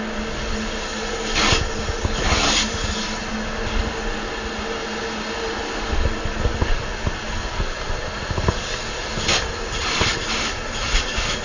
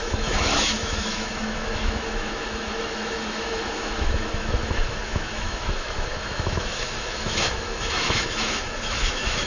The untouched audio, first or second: first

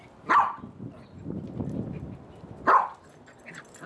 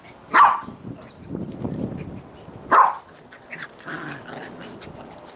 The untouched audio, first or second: first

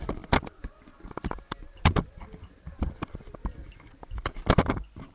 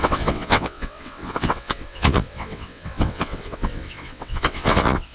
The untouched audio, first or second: first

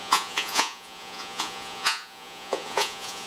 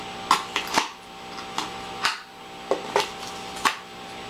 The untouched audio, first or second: second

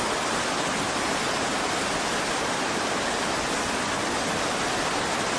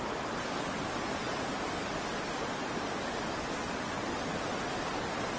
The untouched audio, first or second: second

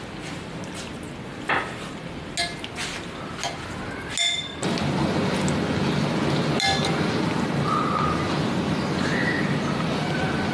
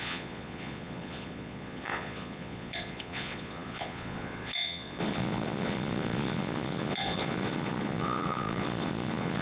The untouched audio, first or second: first